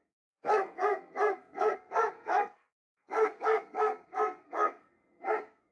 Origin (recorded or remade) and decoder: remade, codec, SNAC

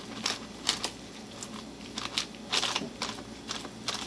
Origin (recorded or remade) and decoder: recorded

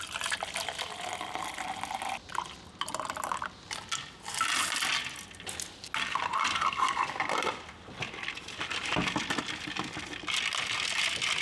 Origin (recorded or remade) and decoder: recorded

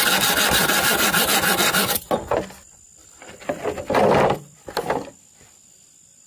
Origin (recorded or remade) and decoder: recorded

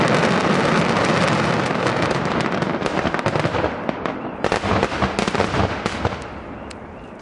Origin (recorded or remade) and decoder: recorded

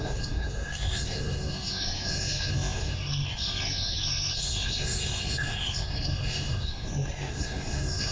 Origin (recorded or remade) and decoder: remade, codec, SNAC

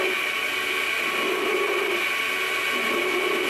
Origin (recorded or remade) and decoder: recorded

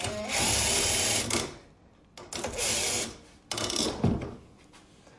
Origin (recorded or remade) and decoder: recorded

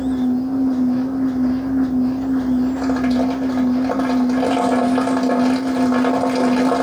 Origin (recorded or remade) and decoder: recorded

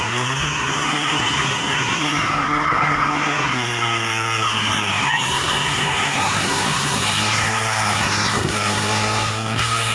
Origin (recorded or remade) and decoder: remade, codec, SNAC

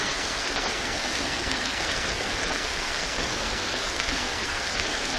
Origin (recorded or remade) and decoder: remade, codec, SNAC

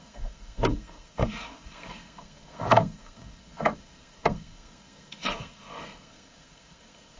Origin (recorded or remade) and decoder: remade, codec, SNAC